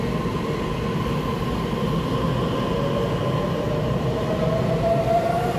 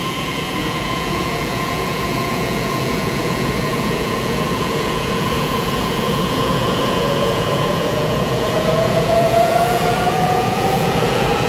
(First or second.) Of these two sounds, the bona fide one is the first